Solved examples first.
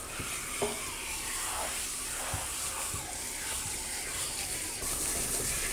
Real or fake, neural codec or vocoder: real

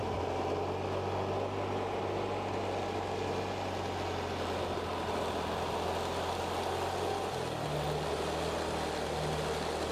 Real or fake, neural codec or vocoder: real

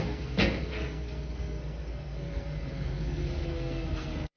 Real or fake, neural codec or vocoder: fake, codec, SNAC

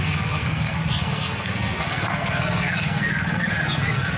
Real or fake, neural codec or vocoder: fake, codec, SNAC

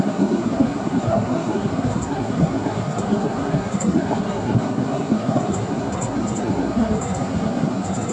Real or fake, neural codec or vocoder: fake, codec, SNAC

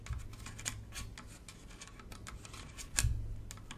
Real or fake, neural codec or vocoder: real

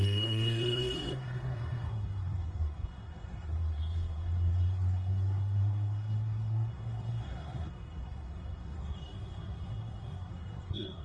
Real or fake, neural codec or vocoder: fake, codec, SNAC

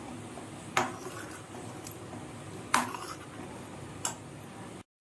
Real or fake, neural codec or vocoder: real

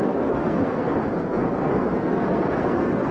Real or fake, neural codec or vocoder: fake, codec, SNAC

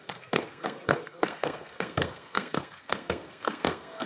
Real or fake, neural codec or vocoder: fake, codec, SNAC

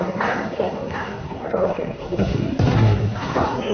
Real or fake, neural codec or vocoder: fake, codec, SNAC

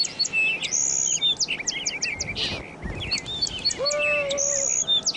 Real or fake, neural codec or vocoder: real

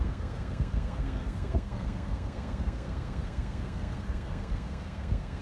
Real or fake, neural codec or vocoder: fake, codec, SNAC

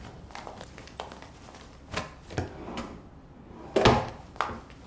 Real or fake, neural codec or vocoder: real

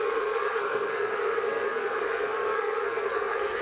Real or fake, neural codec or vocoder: fake, codec, SNAC